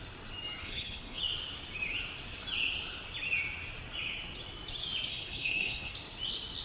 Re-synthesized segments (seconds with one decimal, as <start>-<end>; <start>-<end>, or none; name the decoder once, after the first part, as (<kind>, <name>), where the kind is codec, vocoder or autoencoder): 0.6-1.2 (codec, HILCodec); 5.1-5.9